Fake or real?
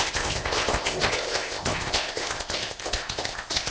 fake